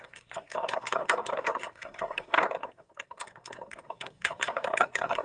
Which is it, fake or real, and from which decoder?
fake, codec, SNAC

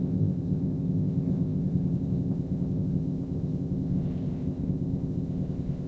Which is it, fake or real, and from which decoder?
fake, codec, ZipCodec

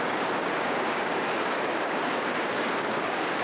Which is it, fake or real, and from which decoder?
fake, codec, DAC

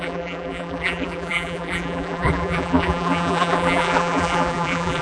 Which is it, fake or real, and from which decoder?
fake, vocoder, BigVGAN v2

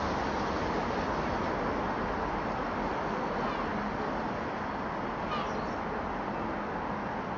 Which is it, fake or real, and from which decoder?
real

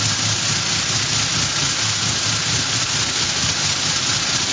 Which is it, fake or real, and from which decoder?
real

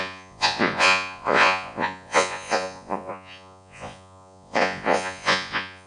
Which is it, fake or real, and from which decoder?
fake, vocoder, Vocos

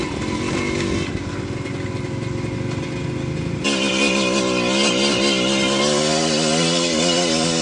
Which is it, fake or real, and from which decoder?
real